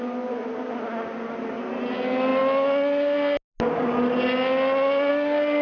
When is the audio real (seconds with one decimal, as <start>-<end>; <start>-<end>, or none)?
0.0-5.6